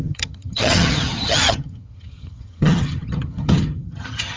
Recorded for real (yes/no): no